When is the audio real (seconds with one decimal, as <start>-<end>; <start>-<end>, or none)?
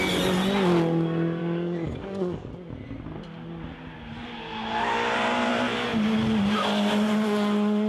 0.0-1.4; 2.5-7.9